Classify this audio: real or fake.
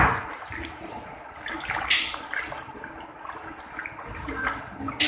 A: real